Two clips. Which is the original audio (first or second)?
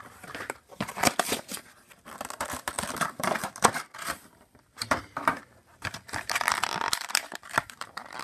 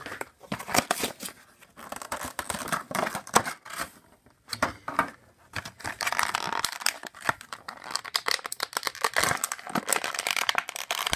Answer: second